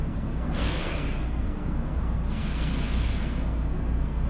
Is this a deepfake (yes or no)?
yes